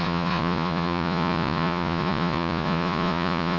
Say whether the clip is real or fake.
fake